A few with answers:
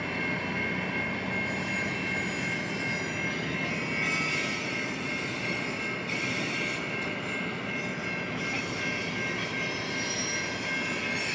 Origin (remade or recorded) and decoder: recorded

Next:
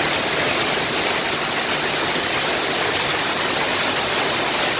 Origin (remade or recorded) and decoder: recorded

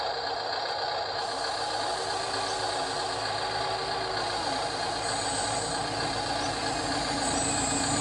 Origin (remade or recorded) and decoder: recorded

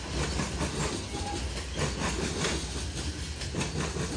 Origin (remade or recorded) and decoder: recorded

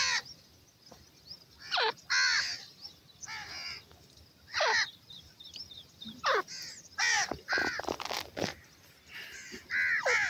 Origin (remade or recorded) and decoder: recorded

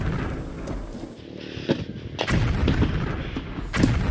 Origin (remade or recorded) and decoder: recorded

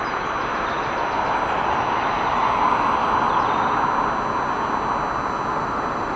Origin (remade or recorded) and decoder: recorded